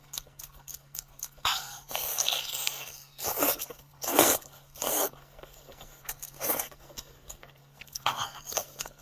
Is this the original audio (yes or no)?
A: no